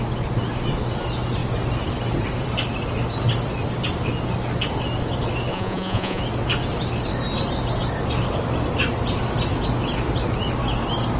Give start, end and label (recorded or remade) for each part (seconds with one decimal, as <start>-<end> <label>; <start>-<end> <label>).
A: 0.0-5.5 recorded; 5.5-6.2 remade; 6.2-11.2 recorded